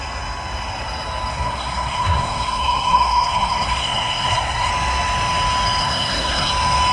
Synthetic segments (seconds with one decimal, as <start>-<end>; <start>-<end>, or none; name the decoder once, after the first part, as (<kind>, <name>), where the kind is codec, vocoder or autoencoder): 1.3-4.7 (codec, SNAC); 5.8-6.5

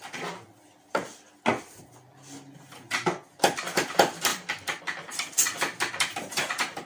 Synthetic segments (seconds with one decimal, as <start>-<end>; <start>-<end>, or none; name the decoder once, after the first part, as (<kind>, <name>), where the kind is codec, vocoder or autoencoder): 4.3-4.8 (vocoder, BigVGAN v2)